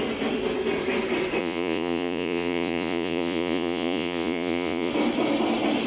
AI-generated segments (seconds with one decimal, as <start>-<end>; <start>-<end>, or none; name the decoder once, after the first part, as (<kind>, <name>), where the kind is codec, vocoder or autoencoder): 1.4-4.9 (vocoder, Vocos)